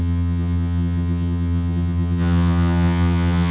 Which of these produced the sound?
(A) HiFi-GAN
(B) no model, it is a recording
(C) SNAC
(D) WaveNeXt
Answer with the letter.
A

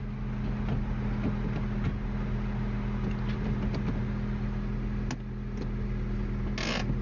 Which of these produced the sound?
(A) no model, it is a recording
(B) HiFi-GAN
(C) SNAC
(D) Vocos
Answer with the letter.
A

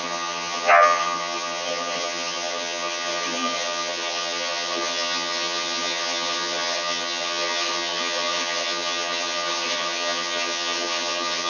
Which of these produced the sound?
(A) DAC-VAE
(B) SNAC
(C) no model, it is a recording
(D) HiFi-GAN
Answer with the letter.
D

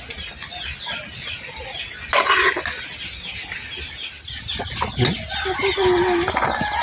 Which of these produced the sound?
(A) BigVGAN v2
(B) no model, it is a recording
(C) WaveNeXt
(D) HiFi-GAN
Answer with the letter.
B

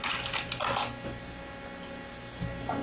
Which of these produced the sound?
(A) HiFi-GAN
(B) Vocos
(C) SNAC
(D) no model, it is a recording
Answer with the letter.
D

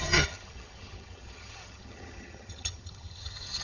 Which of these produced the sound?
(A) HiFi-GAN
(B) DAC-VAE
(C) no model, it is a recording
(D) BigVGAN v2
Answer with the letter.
A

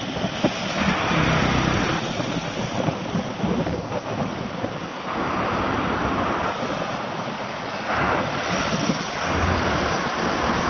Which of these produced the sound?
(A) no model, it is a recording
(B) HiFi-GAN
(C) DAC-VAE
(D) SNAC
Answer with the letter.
A